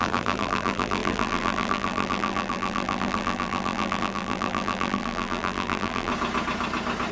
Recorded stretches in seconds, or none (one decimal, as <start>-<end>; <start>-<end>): 6.1-7.1